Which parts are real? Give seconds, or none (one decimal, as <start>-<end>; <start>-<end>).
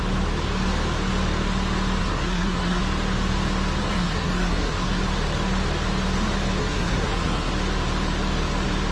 0.0-2.0; 2.8-3.8; 5.0-6.6; 7.5-8.9